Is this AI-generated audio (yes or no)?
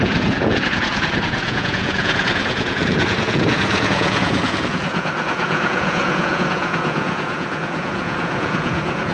yes